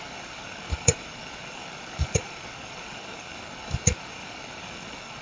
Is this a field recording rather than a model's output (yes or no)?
no